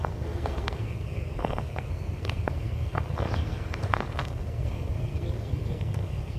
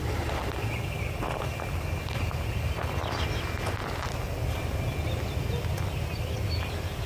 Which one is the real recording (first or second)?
second